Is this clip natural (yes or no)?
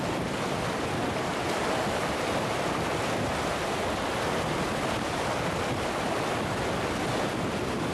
yes